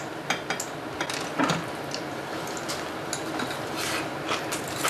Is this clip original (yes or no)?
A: yes